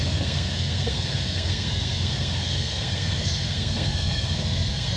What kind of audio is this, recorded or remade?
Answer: remade